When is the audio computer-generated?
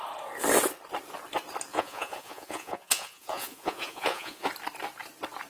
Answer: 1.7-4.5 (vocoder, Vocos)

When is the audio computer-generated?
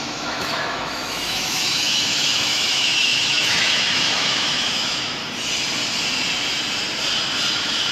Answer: 0.0-5.2 (autoencoder, DAC-VAE); 7.5-7.9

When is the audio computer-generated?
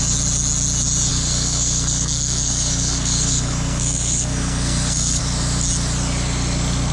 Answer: 1.1-5.2 (codec, SNAC)